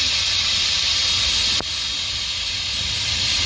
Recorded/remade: recorded